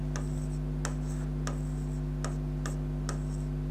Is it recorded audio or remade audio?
recorded